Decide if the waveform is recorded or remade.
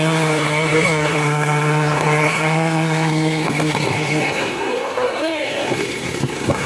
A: remade